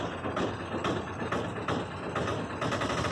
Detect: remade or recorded recorded